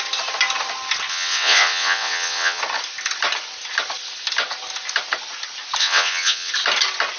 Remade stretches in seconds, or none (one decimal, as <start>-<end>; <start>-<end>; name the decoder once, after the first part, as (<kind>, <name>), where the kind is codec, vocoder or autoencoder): 1.1-2.6 (vocoder, WaveNeXt); 5.8-6.5